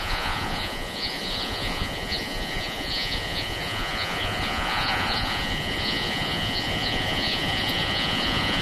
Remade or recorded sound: remade